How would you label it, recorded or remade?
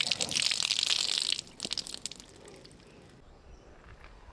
recorded